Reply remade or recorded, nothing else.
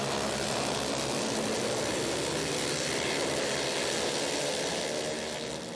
recorded